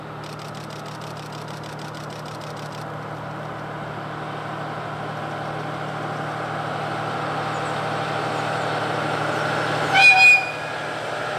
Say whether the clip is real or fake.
real